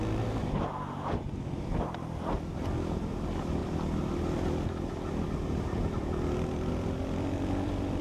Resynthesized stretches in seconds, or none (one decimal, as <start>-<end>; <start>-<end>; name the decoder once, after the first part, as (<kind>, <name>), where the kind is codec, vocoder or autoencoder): none

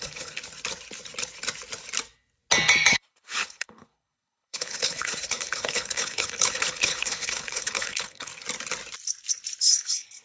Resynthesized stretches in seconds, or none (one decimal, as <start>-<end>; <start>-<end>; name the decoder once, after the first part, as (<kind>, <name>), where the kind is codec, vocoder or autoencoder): 0.0-0.4 (codec, HILCodec); 2.9-8.3; 9.6-10.2

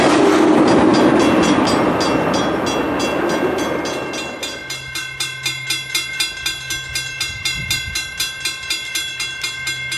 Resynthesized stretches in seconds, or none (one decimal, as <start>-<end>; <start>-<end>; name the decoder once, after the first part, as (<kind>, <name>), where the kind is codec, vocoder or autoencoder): none

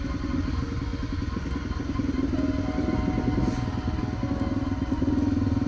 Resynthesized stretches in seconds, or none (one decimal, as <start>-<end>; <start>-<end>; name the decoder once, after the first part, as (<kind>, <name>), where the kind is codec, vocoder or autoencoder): none